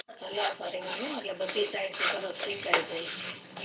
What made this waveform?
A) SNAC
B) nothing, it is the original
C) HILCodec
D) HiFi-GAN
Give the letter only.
C